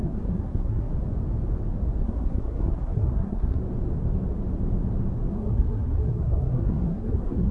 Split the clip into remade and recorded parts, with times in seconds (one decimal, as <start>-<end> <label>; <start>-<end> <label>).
0.0-0.9 remade; 0.9-2.0 recorded; 2.0-3.6 remade; 3.6-5.3 recorded; 5.3-7.5 remade